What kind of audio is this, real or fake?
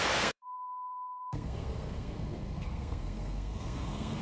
fake